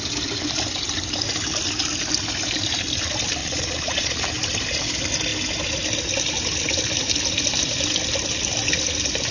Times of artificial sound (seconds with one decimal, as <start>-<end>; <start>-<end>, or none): 3.4-4.2